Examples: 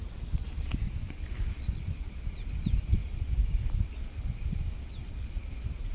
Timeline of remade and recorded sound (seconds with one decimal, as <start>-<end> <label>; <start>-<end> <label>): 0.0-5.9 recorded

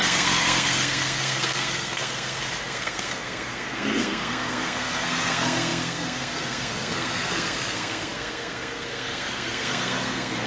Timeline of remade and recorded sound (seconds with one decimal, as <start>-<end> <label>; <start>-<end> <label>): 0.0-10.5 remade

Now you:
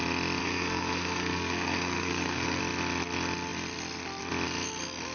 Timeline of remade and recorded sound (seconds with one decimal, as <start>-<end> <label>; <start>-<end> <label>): 0.0-0.4 recorded; 0.4-2.6 remade; 2.6-5.1 recorded

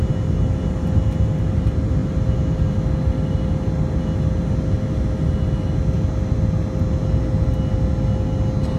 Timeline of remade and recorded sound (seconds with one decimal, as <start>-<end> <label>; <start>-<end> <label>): 0.0-8.8 recorded

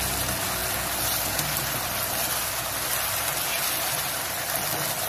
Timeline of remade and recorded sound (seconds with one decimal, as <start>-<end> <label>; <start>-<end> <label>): 0.0-5.1 recorded

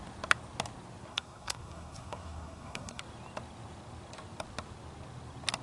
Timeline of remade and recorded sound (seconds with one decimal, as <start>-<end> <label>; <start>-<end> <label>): 0.0-1.1 recorded; 1.1-3.0 remade; 3.0-5.6 recorded

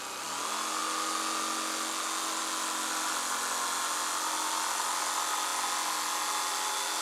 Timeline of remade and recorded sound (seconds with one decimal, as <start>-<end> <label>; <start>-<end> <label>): 0.0-7.0 recorded